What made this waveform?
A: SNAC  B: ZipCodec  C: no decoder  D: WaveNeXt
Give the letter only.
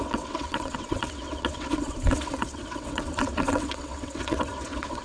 D